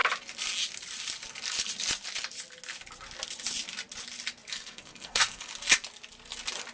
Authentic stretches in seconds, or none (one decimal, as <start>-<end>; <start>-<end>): 0.0-4.5; 5.5-6.7